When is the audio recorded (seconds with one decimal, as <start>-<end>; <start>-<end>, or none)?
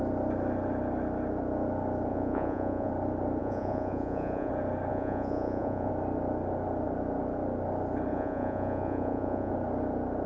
0.0-2.1; 2.9-3.4; 4.5-4.9; 5.9-8.1; 9.5-10.3